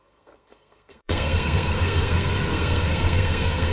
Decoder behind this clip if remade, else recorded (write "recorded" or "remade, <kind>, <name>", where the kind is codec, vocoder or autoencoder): remade, codec, SNAC